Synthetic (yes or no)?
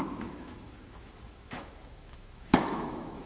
yes